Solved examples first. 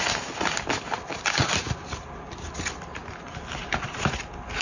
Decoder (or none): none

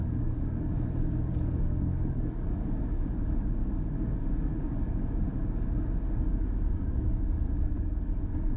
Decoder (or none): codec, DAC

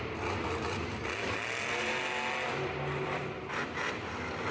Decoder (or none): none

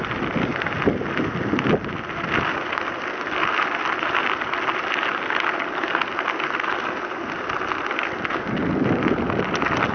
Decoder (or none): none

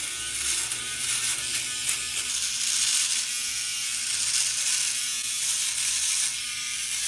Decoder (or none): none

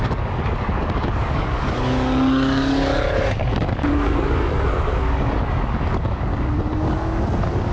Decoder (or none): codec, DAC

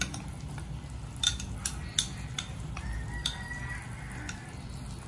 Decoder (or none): none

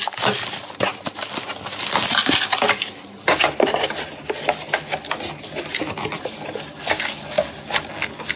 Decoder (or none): none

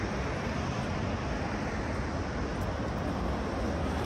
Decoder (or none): none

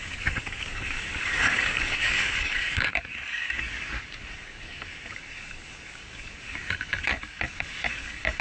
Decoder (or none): codec, DAC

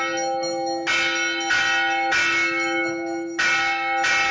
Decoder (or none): none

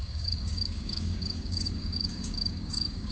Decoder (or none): codec, DAC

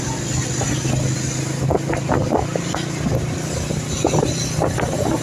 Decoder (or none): none